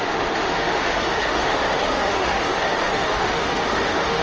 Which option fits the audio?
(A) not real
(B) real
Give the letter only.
A